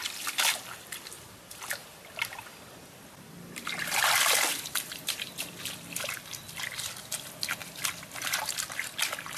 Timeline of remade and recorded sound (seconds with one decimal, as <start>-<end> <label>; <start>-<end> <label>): 0.0-1.8 recorded; 1.8-6.1 remade; 6.1-7.6 recorded; 7.6-8.7 remade; 8.7-9.4 recorded